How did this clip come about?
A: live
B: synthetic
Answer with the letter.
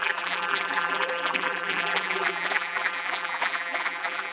B